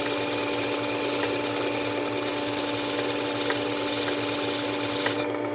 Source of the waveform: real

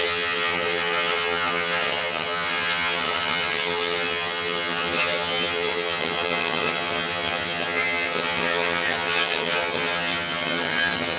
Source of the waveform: fake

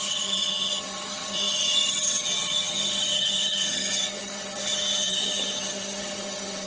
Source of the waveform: fake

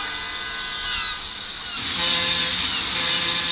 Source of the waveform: real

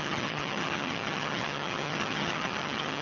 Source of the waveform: fake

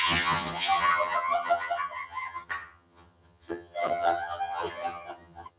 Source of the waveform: fake